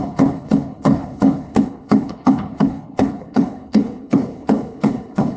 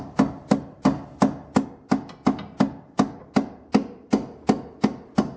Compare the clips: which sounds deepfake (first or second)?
first